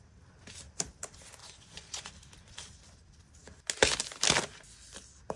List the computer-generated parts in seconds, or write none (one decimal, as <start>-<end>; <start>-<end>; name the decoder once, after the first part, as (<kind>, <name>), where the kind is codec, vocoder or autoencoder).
1.4-2.1 (vocoder, Vocos)